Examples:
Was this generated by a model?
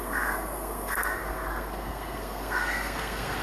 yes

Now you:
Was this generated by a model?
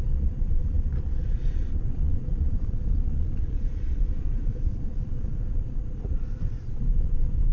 yes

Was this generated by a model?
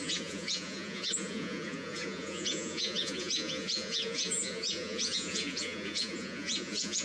yes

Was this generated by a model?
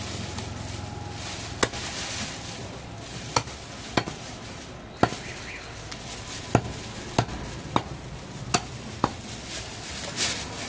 no